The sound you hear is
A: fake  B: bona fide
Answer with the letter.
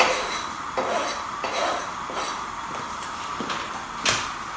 B